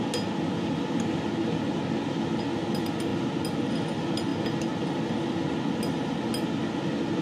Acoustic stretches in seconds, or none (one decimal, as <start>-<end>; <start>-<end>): 0.0-7.2

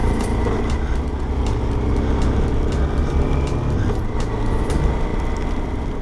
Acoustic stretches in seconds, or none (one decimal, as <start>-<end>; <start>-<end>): 0.0-5.1

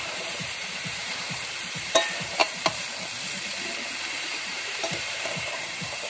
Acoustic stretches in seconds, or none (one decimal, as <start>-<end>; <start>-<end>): 2.4-4.3

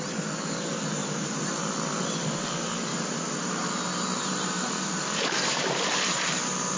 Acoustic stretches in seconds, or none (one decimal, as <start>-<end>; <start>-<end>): 0.0-1.0; 1.6-2.9; 6.2-6.8